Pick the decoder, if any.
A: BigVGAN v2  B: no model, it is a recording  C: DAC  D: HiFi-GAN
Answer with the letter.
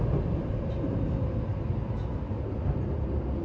B